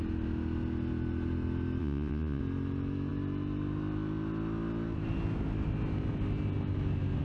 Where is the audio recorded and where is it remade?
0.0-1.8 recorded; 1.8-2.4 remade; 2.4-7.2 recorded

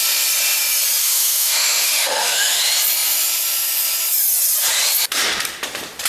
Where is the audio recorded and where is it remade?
0.0-1.0 recorded; 1.0-2.6 remade; 2.6-6.1 recorded

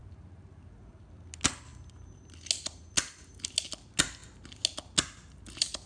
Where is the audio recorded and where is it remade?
0.0-0.9 remade; 0.9-5.9 recorded

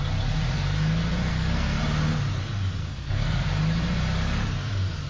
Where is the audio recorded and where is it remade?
0.0-1.3 recorded; 1.3-1.8 remade; 1.8-2.8 recorded; 2.8-3.5 remade; 3.5-5.1 recorded

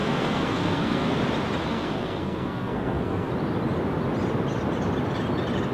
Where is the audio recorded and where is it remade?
0.0-1.2 remade; 1.2-1.7 recorded; 1.7-3.3 remade; 3.3-5.7 recorded